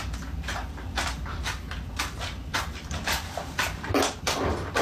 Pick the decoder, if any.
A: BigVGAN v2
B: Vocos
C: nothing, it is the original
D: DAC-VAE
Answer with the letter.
A